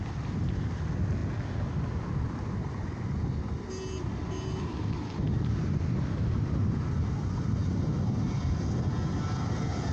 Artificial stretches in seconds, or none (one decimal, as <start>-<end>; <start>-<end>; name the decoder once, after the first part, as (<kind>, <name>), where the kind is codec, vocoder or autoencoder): none